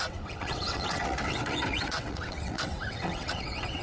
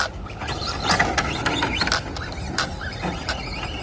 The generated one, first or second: first